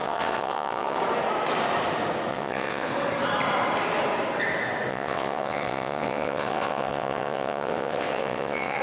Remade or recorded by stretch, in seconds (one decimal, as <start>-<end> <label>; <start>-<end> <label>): 0.0-1.0 remade; 1.0-2.3 recorded; 2.3-2.9 remade; 2.9-4.9 recorded; 4.9-8.8 remade